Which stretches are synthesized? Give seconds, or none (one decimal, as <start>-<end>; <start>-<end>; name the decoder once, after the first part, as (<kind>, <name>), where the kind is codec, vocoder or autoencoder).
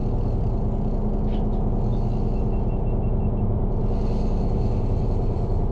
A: 3.4-3.8 (vocoder, BigVGAN v2); 4.8-5.7